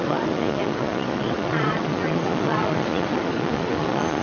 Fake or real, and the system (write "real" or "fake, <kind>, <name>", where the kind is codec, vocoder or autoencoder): fake, vocoder, Vocos